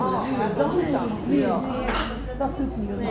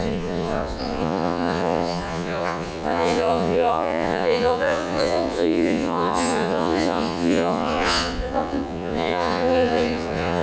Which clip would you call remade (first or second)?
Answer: second